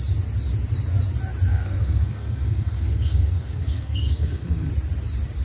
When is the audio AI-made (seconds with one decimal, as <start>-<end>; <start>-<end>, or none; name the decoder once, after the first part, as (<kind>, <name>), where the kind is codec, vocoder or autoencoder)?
1.5-4.7 (codec, SNAC)